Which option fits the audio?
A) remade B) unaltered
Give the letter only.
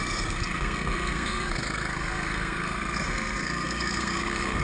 A